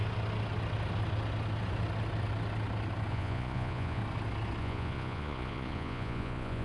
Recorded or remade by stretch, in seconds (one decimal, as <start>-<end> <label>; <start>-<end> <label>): 0.0-3.1 recorded; 3.1-4.0 remade; 4.0-4.6 recorded; 4.6-6.6 remade